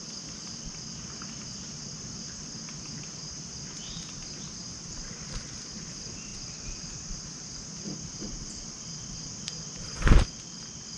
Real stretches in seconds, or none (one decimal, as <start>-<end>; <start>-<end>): 0.0-4.6; 5.4-11.0